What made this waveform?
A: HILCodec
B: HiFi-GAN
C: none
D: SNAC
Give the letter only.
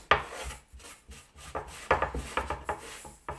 C